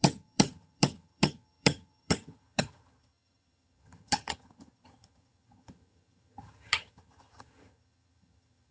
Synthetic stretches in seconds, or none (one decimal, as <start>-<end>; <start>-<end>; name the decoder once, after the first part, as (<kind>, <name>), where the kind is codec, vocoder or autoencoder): 0.0-8.7 (vocoder, HiFi-GAN)